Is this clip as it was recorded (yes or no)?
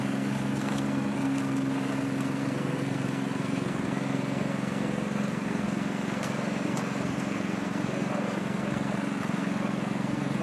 no